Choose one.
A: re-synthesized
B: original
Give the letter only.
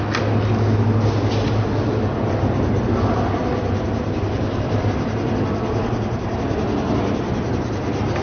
B